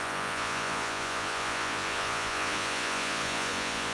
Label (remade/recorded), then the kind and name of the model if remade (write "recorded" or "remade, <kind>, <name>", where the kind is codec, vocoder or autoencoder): remade, vocoder, Vocos